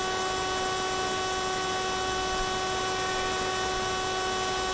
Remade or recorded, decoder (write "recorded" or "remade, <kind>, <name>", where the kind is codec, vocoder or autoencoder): recorded